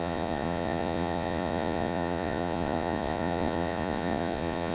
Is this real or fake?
fake